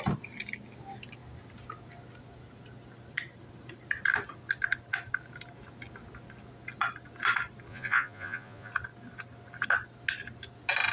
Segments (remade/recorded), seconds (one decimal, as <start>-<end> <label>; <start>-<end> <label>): 0.0-7.7 recorded; 7.7-8.7 remade; 8.7-10.9 recorded